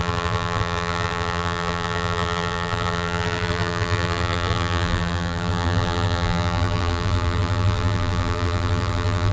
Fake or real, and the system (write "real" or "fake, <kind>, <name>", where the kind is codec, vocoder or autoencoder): fake, vocoder, BigVGAN v2